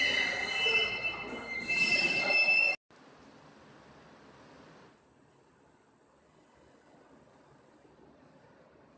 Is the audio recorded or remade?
recorded